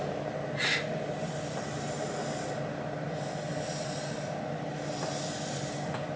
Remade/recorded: recorded